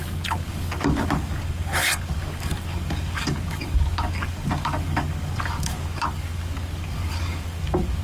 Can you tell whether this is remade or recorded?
remade